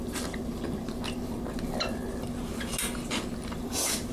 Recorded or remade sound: recorded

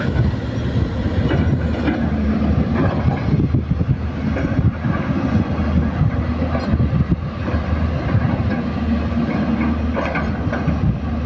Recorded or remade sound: recorded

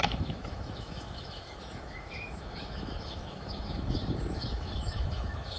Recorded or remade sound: remade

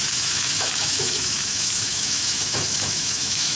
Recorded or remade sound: remade